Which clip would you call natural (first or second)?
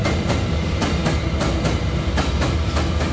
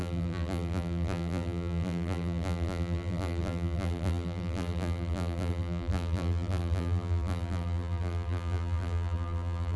first